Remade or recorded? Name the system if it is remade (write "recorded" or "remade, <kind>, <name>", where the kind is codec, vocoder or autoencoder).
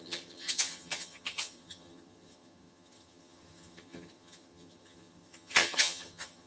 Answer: remade, vocoder, HiFi-GAN